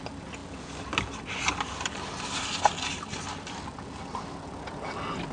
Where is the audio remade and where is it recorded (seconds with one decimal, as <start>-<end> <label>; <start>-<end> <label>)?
0.0-5.3 recorded